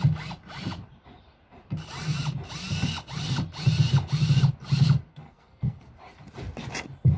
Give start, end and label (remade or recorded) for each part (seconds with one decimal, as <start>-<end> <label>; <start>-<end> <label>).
0.0-5.1 recorded; 5.1-5.9 remade; 5.9-7.2 recorded